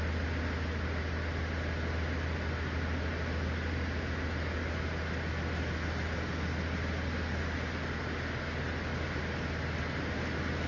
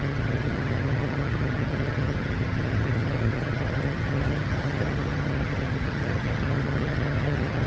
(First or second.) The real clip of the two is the first